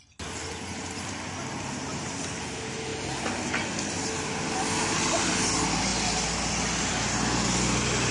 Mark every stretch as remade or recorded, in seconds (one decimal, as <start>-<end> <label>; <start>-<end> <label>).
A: 0.0-8.1 recorded